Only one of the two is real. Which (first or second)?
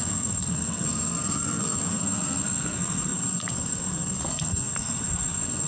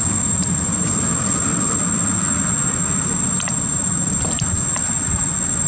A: second